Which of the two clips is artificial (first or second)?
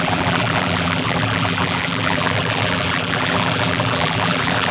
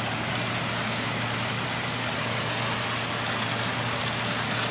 first